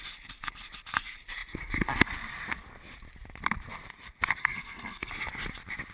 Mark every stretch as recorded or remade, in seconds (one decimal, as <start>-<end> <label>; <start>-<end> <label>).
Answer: 0.0-4.4 recorded; 4.4-5.1 remade; 5.1-5.9 recorded